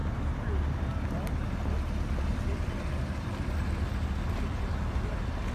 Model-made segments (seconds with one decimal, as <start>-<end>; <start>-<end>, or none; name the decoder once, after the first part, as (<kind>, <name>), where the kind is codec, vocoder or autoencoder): none